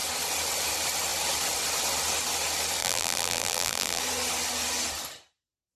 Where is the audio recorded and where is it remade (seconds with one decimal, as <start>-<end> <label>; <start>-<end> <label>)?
0.0-2.8 recorded; 2.8-4.0 remade; 4.0-5.8 recorded